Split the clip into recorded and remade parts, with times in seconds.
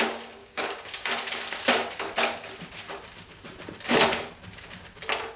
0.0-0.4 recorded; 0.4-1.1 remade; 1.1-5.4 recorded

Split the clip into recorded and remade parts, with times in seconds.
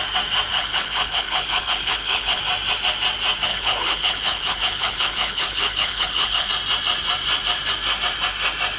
0.0-0.5 recorded; 0.5-2.4 remade; 2.4-3.5 recorded; 3.5-6.5 remade; 6.5-8.8 recorded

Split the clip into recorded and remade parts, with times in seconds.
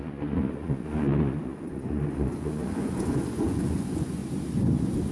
0.0-4.2 remade; 4.2-5.1 recorded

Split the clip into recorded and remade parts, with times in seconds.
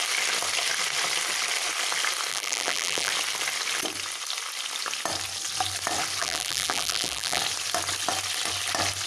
0.0-2.3 recorded; 2.3-3.1 remade; 3.1-6.2 recorded; 6.2-7.4 remade; 7.4-9.1 recorded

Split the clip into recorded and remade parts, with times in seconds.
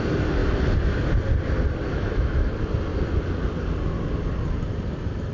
0.0-1.9 recorded; 1.9-2.5 remade; 2.5-5.3 recorded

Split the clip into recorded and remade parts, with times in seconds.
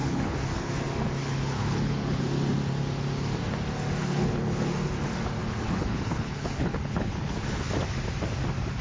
0.0-0.7 remade; 0.7-1.2 recorded; 1.2-2.2 remade; 2.2-4.0 recorded; 4.0-4.7 remade; 4.7-5.4 recorded; 5.4-7.7 remade; 7.7-8.8 recorded